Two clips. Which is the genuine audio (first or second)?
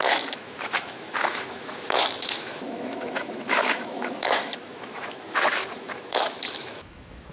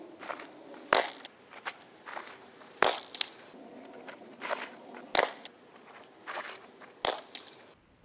second